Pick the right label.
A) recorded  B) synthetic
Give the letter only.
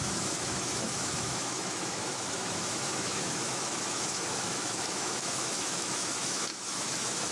B